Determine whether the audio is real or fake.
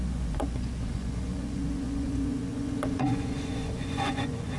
fake